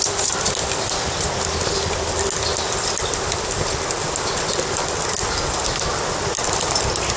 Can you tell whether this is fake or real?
real